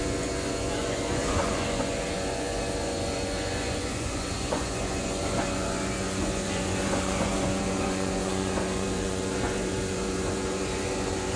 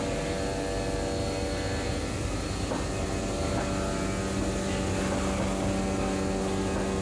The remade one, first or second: first